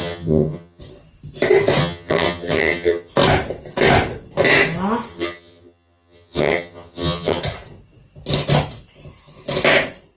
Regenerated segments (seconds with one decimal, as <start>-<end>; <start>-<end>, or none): 0.0-0.8; 1.8-3.1; 5.1-7.4